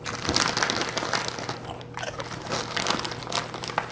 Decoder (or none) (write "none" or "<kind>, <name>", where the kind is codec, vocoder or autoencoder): none